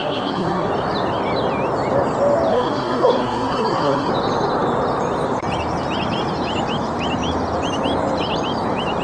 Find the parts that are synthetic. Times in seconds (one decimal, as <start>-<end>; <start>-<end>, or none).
0.0-0.7; 2.5-4.1

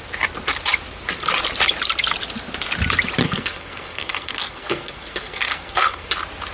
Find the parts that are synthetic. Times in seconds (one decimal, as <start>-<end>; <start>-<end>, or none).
3.2-6.1

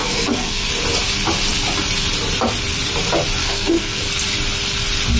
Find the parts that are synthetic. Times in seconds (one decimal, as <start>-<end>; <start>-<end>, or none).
0.0-0.7; 3.4-4.0